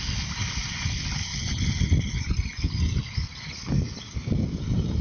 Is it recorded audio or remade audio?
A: recorded